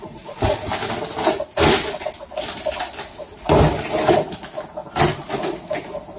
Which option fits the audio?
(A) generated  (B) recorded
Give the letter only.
B